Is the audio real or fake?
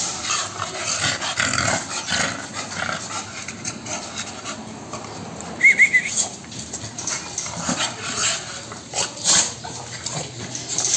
real